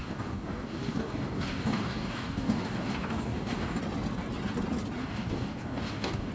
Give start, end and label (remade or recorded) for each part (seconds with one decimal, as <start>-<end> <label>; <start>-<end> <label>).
0.0-3.8 remade; 3.8-5.0 recorded; 5.0-6.3 remade